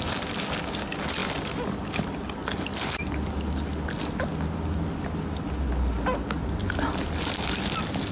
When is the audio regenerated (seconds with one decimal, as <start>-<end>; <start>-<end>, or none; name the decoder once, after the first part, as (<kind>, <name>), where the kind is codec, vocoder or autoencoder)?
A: none